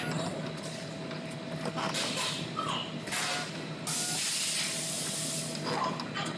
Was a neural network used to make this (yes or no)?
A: no